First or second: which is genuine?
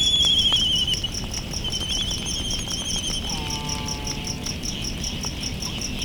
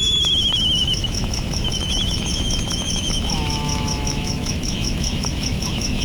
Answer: first